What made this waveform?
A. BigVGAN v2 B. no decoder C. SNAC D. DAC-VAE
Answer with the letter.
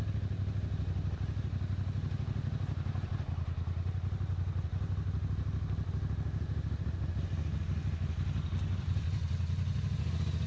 B